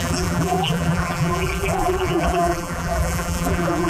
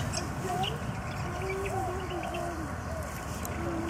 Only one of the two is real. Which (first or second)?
second